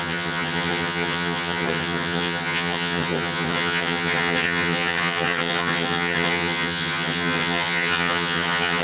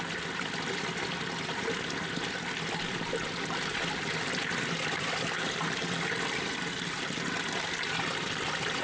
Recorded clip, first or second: second